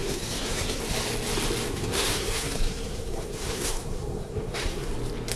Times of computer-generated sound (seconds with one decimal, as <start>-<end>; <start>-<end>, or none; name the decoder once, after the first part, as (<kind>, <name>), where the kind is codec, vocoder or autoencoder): 0.0-0.8 (codec, SNAC); 1.7-4.9